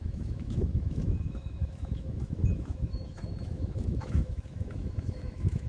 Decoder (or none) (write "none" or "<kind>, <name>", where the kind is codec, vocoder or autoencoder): autoencoder, DAC-VAE